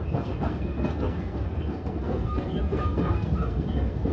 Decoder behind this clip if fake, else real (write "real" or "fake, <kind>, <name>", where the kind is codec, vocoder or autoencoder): fake, codec, SNAC